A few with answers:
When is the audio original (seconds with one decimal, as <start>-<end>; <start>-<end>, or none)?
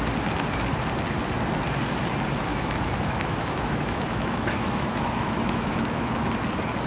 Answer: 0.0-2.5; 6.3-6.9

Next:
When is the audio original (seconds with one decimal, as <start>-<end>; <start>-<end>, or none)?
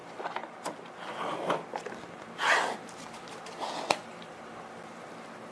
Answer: 0.0-3.3; 4.0-5.5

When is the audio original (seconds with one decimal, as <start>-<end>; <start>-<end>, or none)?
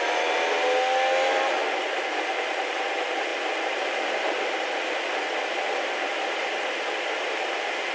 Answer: 0.0-7.9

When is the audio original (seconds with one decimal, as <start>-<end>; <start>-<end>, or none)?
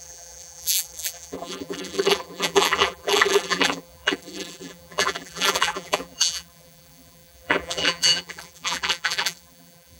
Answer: none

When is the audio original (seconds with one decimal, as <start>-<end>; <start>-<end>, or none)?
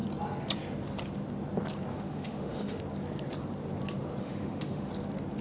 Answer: 0.0-1.9; 2.8-4.2; 4.9-5.4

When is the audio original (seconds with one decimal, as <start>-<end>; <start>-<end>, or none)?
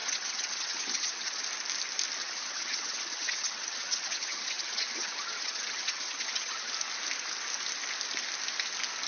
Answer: 1.4-2.2; 6.7-9.1